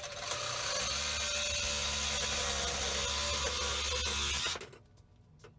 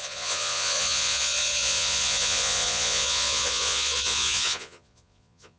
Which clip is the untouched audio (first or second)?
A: first